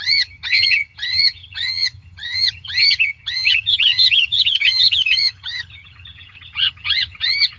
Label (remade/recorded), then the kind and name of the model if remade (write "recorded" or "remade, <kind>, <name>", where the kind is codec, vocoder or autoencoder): remade, vocoder, HiFi-GAN